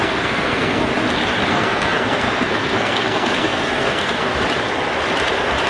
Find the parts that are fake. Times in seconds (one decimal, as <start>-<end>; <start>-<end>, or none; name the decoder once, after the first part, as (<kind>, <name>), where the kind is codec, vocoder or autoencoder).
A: 0.0-0.9 (codec, SNAC); 1.5-4.3